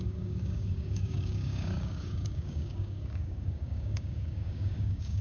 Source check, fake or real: fake